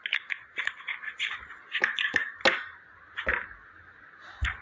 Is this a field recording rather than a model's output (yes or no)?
yes